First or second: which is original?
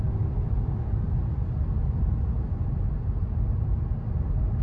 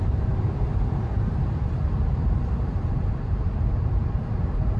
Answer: first